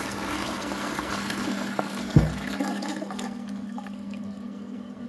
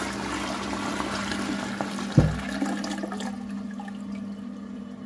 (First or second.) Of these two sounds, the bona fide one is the second